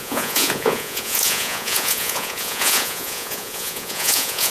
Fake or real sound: fake